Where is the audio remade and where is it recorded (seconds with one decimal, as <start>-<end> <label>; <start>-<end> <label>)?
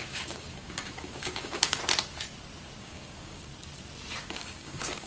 0.0-1.8 remade; 1.8-2.8 recorded; 2.8-3.5 remade; 3.5-4.2 recorded; 4.2-5.1 remade